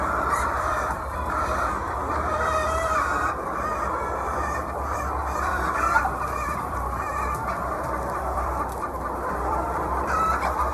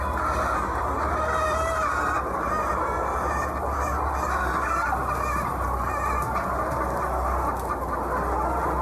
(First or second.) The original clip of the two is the second